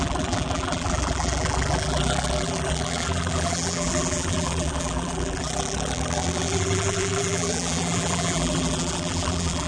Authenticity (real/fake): fake